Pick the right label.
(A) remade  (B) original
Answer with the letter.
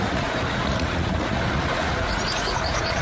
A